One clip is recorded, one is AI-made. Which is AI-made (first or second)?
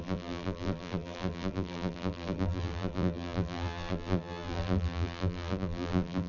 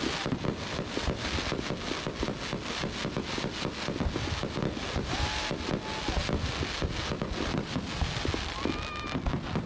first